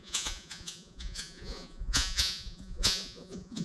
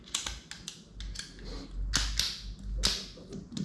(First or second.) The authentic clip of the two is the second